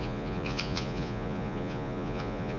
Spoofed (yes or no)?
yes